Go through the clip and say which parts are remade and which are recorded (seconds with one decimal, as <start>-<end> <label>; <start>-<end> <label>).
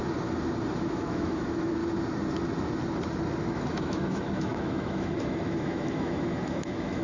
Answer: 0.0-0.8 recorded; 0.8-1.8 remade; 1.8-3.4 recorded; 3.4-7.0 remade